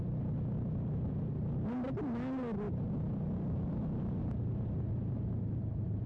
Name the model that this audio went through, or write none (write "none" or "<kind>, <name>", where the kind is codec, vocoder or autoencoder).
none